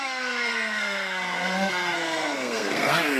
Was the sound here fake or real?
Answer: fake